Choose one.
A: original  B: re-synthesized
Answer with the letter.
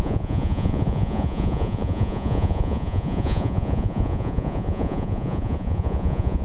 B